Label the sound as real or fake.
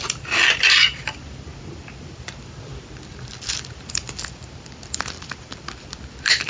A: fake